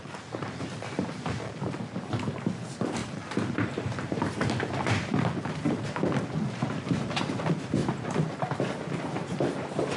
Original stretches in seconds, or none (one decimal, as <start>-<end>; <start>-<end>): 7.8-9.0

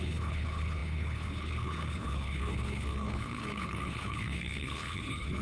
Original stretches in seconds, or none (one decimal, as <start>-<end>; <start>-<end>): none